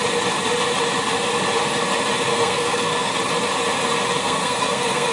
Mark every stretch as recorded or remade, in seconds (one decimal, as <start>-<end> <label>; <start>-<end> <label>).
0.0-2.3 recorded; 2.3-3.1 remade; 3.1-4.2 recorded; 4.2-5.1 remade

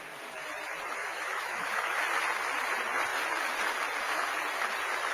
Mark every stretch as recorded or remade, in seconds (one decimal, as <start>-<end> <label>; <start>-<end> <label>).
0.0-1.0 recorded; 1.0-2.0 remade; 2.0-5.1 recorded

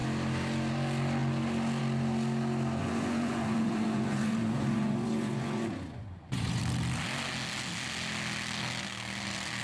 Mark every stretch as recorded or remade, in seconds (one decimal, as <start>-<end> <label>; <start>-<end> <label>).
0.0-2.8 recorded; 2.8-6.6 remade; 6.6-9.6 recorded

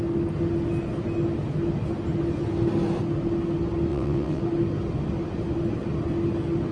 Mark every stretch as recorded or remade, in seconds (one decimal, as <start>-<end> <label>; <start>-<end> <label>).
0.0-3.9 recorded; 3.9-4.4 remade; 4.4-6.7 recorded

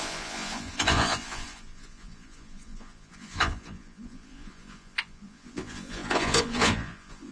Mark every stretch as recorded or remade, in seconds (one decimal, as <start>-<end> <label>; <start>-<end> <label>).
0.0-7.3 remade

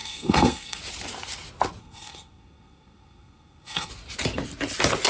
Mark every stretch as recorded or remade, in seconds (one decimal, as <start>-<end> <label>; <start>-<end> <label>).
0.0-0.8 remade; 0.8-1.8 recorded; 1.8-3.9 remade; 3.9-5.1 recorded

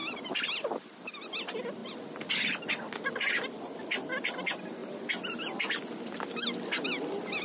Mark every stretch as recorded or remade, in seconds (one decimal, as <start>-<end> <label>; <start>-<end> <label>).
0.0-7.4 recorded

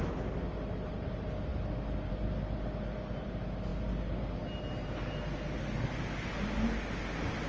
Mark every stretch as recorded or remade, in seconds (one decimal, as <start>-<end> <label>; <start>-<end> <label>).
0.0-7.5 recorded